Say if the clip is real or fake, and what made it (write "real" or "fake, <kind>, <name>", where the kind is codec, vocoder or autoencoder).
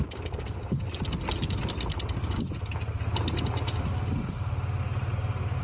real